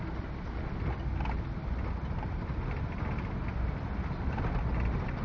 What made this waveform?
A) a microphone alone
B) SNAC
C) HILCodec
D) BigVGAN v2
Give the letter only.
A